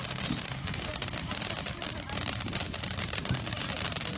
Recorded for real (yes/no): no